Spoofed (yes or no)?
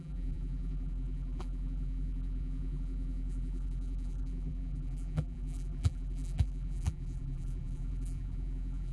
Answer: yes